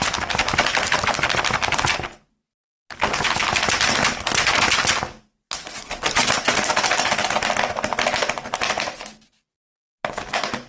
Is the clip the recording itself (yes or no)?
yes